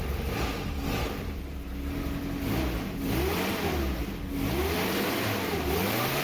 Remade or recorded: recorded